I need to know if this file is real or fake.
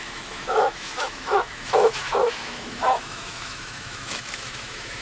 fake